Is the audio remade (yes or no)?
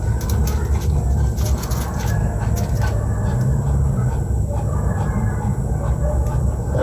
no